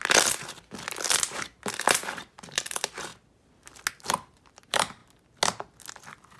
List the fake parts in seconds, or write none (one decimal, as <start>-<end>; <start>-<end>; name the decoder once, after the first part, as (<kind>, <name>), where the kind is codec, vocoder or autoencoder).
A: 0.0-3.1 (vocoder, BigVGAN v2); 3.9-5.0; 5.9-6.4

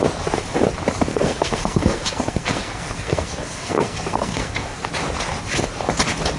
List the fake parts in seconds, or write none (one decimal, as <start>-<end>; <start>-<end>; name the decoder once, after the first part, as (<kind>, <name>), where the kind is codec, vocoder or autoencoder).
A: 1.1-4.9 (codec, SNAC)

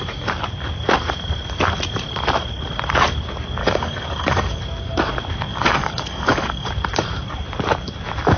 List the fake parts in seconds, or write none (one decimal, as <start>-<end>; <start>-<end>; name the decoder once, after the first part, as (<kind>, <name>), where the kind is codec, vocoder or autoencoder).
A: 3.6-4.6 (codec, DAC); 5.5-6.7

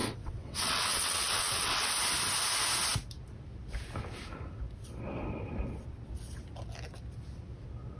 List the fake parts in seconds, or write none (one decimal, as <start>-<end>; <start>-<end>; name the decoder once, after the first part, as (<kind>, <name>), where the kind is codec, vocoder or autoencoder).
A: 0.0-1.9 (vocoder, WaveNeXt)

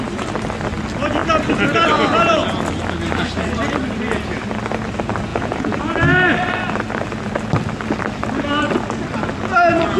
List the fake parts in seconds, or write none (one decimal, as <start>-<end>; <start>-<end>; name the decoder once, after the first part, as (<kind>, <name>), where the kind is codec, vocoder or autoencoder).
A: 5.3-5.8 (vocoder, Vocos)